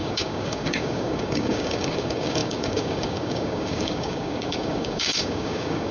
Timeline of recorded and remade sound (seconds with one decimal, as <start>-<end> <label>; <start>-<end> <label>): 0.0-5.9 remade